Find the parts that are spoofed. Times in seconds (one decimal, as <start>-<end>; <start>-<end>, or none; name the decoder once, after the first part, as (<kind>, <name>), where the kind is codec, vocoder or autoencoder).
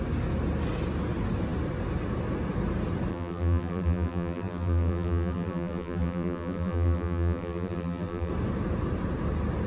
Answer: 3.1-8.3 (vocoder, BigVGAN v2)